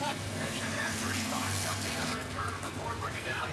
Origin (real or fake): fake